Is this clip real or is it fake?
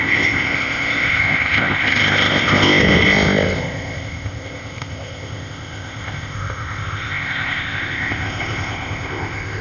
fake